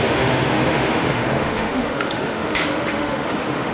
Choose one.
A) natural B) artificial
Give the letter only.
B